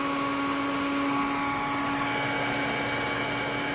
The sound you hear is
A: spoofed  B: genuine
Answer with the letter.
B